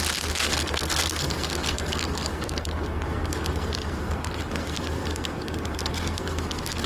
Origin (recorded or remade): remade